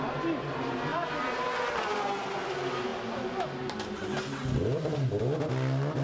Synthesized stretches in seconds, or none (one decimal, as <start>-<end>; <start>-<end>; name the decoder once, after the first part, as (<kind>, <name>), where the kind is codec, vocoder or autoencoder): none